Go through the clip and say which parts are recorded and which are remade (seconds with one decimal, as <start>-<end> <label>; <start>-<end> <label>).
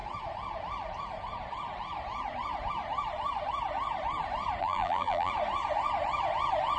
0.0-4.6 recorded; 4.6-5.3 remade; 5.3-6.8 recorded